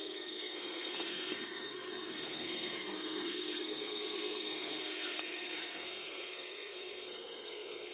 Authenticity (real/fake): fake